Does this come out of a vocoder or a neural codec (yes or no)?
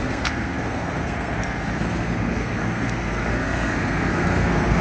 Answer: yes